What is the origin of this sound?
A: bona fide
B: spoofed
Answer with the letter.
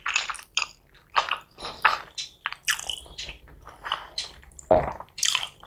B